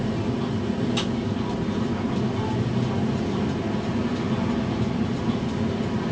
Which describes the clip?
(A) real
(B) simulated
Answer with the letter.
A